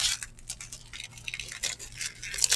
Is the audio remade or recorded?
recorded